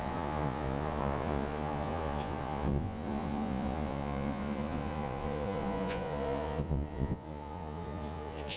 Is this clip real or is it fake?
fake